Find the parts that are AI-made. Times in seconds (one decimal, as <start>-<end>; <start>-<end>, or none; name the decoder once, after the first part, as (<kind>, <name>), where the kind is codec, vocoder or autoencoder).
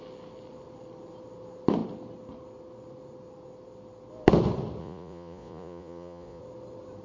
4.8-6.4 (vocoder, Vocos)